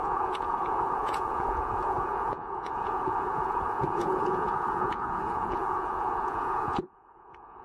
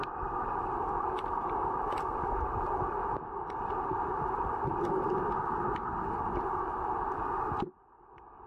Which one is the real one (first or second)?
second